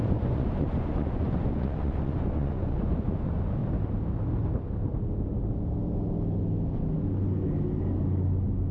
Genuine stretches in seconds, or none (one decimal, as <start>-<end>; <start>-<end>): 3.6-8.7